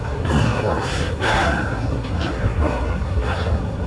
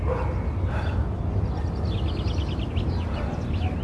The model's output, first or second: first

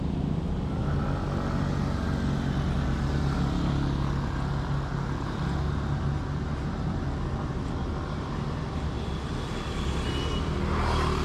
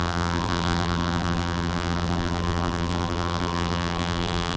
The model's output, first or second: second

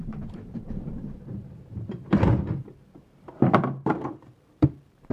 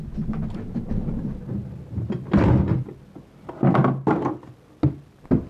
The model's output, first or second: first